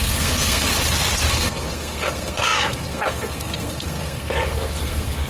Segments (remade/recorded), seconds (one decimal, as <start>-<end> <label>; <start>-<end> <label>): 0.0-0.7 remade; 0.7-1.3 recorded; 1.3-5.3 remade